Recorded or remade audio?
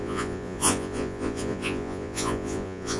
remade